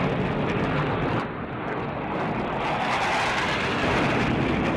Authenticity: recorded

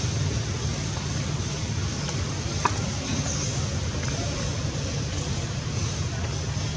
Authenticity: recorded